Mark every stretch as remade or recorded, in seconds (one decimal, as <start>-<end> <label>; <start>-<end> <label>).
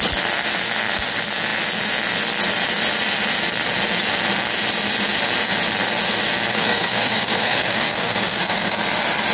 0.0-6.5 recorded; 6.5-8.8 remade; 8.8-9.3 recorded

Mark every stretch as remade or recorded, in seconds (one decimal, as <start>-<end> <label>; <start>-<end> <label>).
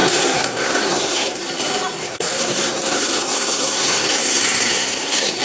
0.0-1.4 remade; 1.4-2.0 recorded; 2.0-5.4 remade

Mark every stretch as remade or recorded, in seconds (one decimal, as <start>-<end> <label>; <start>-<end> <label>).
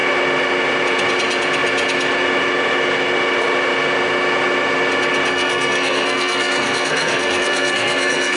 0.0-5.3 recorded; 5.3-8.4 remade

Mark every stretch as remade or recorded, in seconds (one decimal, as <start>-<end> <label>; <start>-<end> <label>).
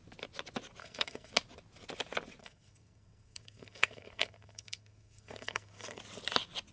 0.0-0.8 recorded; 0.8-1.3 remade; 1.3-2.4 recorded; 2.4-6.0 remade; 6.0-6.7 recorded